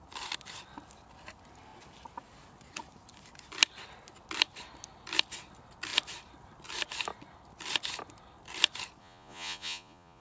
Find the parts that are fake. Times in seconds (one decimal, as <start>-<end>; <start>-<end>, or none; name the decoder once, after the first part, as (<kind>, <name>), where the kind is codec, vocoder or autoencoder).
9.0-10.2 (vocoder, Vocos)